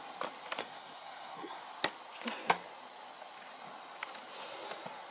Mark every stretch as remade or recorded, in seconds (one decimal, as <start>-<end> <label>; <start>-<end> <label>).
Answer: 0.0-0.6 recorded; 0.6-1.6 remade; 1.6-5.1 recorded